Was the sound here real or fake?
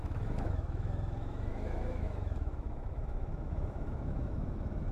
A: fake